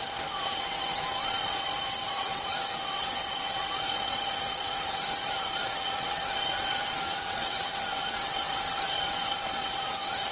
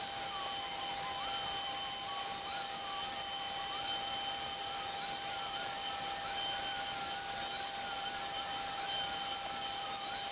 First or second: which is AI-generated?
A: first